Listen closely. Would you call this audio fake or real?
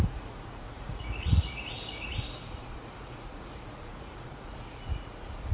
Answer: fake